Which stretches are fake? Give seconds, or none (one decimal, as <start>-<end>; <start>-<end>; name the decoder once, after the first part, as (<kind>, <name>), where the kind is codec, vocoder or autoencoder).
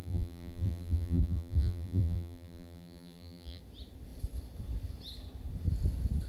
0.0-3.6 (vocoder, BigVGAN v2)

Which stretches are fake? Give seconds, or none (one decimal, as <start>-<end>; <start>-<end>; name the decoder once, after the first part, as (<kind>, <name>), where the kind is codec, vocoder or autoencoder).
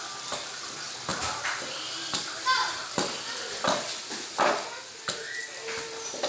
1.1-3.6 (vocoder, BigVGAN v2); 5.2-6.3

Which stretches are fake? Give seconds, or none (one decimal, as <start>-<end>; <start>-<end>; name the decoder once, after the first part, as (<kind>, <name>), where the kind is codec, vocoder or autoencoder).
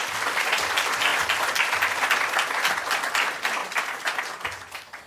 1.1-3.1 (vocoder, BigVGAN v2); 3.6-4.2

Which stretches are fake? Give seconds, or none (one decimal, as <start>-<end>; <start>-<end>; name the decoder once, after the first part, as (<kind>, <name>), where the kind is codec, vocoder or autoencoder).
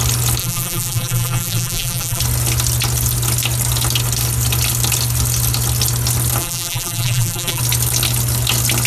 0.4-2.2 (vocoder, BigVGAN v2); 6.4-7.6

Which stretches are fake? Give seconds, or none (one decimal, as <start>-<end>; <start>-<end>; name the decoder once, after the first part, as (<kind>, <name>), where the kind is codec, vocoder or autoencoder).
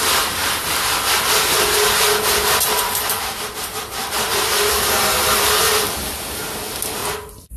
0.0-0.4 (vocoder, BigVGAN v2); 1.1-7.0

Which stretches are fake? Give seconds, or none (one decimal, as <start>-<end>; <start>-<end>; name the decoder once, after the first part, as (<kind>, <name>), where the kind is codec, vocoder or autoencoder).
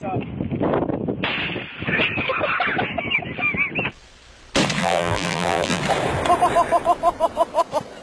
4.8-5.8 (vocoder, BigVGAN v2)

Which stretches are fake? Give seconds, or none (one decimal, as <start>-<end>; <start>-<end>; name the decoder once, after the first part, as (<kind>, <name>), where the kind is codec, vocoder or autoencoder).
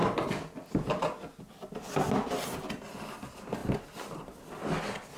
none